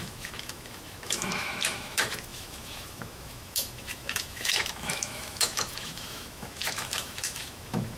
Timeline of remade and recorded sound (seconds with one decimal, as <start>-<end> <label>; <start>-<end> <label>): 0.0-8.0 remade